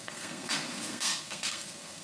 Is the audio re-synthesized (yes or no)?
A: yes